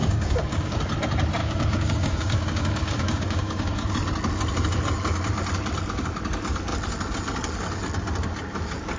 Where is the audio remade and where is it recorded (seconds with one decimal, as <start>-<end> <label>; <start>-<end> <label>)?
0.0-0.8 remade; 0.8-1.4 recorded; 1.4-3.9 remade; 3.9-9.0 recorded